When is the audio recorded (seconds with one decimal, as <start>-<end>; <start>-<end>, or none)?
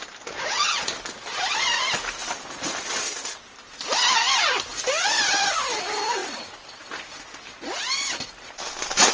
0.0-2.2; 4.1-6.2; 6.8-9.1